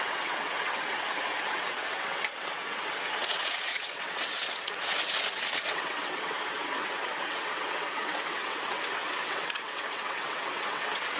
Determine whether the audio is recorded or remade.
remade